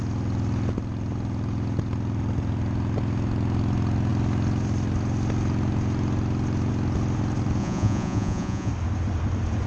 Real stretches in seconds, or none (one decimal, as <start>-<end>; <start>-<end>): 0.0-7.6; 8.7-9.7